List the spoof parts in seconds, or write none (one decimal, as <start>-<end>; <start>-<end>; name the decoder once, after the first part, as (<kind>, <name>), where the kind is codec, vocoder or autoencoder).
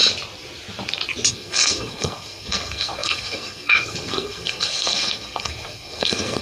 1.3-6.4 (codec, SNAC)